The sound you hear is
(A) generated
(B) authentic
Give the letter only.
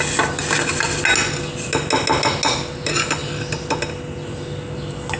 B